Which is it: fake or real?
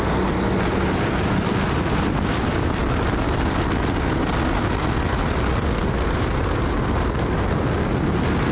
real